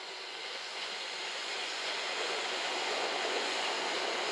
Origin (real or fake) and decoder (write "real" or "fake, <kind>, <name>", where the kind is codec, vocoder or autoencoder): fake, vocoder, Vocos